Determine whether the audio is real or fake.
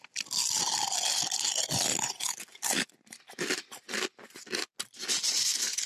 real